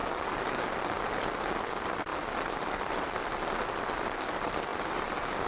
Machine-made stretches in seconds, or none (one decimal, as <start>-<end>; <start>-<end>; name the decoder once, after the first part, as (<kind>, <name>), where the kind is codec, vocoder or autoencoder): none